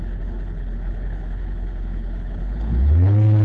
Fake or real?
fake